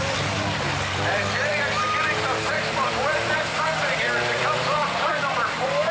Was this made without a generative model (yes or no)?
no